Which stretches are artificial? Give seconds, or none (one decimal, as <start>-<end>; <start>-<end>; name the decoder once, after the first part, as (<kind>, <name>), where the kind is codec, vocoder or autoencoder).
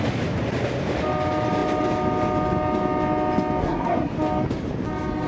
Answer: 3.6-4.1 (codec, SNAC)